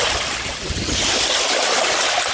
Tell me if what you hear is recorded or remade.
recorded